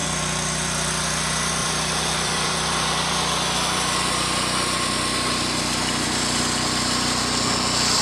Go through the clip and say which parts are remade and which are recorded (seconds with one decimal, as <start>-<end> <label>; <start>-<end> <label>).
0.0-1.6 recorded; 1.6-6.4 remade; 6.4-8.0 recorded